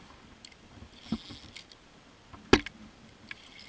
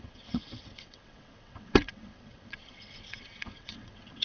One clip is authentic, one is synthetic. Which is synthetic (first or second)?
second